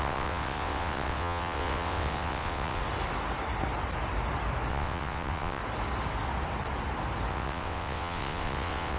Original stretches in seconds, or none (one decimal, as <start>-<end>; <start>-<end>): 2.8-4.7; 5.6-7.3

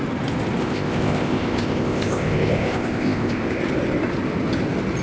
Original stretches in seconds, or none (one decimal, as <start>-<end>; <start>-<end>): 0.0-0.6; 3.6-5.0

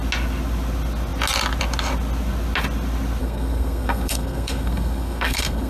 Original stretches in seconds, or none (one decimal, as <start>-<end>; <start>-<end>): 0.0-3.2